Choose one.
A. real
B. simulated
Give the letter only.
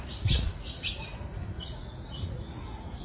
B